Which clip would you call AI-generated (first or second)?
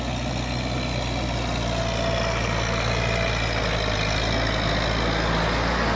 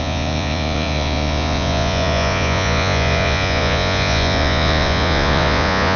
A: second